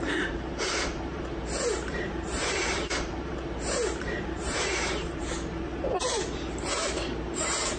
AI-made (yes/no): yes